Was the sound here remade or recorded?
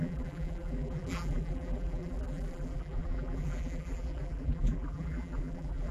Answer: remade